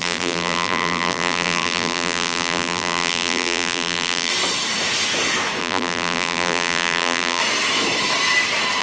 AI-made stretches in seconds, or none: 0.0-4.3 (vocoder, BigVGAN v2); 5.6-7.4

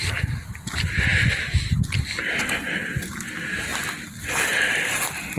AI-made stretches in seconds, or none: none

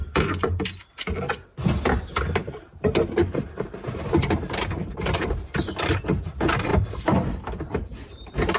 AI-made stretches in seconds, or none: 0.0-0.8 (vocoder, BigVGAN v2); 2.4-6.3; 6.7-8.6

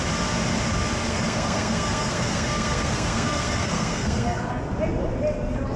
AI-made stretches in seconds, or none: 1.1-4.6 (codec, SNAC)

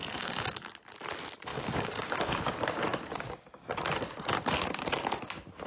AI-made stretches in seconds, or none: 0.0-0.5 (codec, DAC); 1.5-2.5

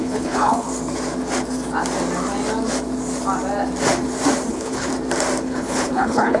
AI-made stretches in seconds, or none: 0.0-0.7 (codec, HILCodec); 4.5-4.9; 5.4-6.4

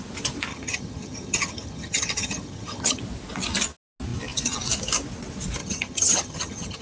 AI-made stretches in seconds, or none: 0.5-3.0 (vocoder, HiFi-GAN); 5.6-6.8